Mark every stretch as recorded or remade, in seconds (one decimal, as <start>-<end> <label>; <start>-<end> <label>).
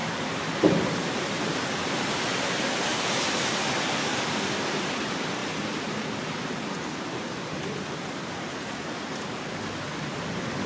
0.0-2.3 remade; 2.3-10.7 recorded